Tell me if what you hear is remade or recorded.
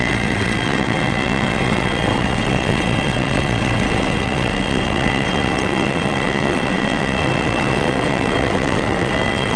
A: remade